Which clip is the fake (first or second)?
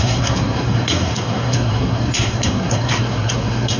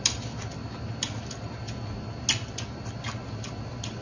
first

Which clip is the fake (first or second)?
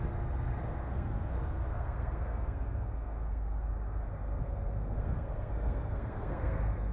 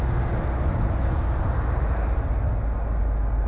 first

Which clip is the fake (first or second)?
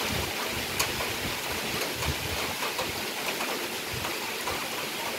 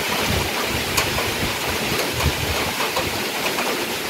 second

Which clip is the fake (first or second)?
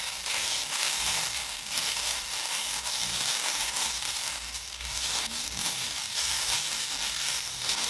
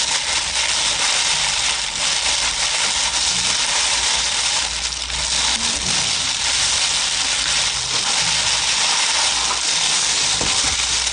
first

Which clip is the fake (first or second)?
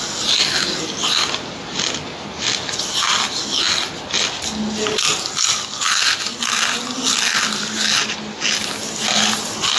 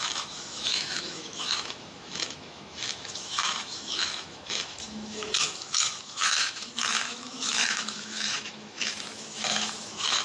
second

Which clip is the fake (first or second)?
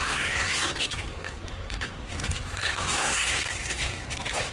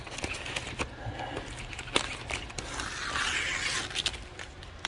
first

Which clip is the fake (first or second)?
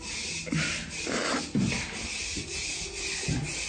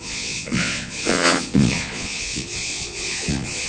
second